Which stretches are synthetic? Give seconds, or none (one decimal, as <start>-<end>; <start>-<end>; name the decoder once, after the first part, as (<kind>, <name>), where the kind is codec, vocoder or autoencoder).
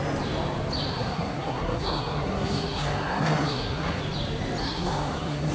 0.9-4.0 (codec, SNAC); 4.6-5.5